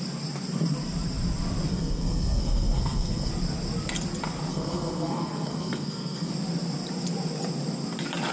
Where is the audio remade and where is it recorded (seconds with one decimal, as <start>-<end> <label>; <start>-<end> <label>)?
0.0-1.7 recorded; 1.7-3.3 remade; 3.3-4.5 recorded; 4.5-6.3 remade; 6.3-8.3 recorded